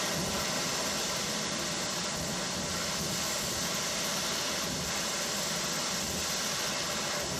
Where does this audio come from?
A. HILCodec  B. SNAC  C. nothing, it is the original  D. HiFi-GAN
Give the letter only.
C